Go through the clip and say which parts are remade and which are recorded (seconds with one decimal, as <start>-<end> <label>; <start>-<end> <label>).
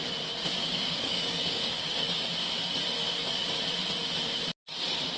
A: 0.0-0.6 recorded; 0.6-2.3 remade; 2.3-5.2 recorded